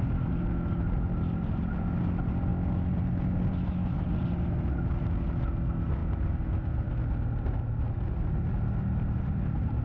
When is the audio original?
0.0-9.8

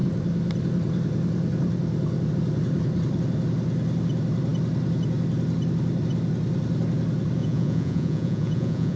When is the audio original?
0.0-7.4